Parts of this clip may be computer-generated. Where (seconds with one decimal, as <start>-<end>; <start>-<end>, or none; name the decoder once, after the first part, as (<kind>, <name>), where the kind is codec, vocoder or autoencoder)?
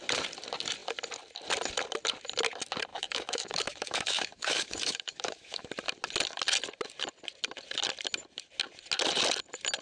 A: 2.9-5.7 (autoencoder, DAC-VAE)